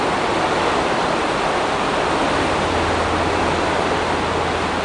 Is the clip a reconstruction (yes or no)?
no